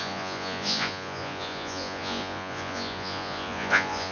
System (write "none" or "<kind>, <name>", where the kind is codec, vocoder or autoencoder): vocoder, Vocos